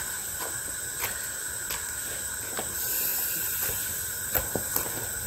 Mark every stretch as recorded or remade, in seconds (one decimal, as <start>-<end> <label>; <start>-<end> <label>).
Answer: 0.0-5.3 recorded